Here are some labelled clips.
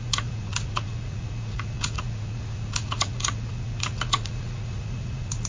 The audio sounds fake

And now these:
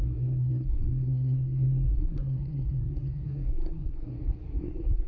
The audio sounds fake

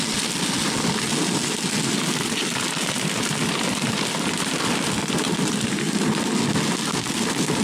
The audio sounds real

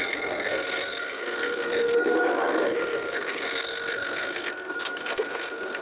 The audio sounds fake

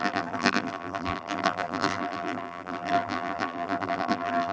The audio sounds fake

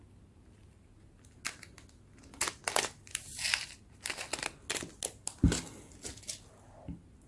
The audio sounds real